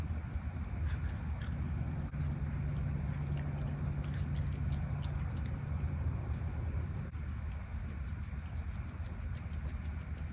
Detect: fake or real real